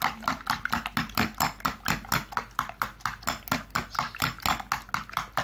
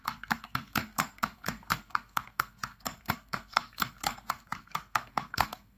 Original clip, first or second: first